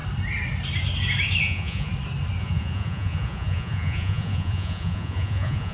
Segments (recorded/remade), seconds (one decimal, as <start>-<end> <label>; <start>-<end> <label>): 0.0-1.4 recorded; 1.4-1.9 remade; 1.9-2.4 recorded; 2.4-5.7 remade